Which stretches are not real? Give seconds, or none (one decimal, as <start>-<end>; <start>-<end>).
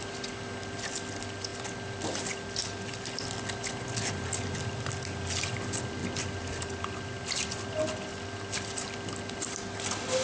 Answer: none